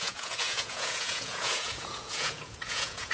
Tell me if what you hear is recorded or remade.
remade